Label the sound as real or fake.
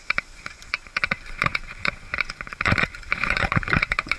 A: fake